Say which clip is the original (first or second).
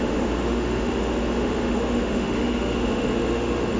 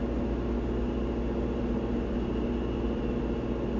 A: second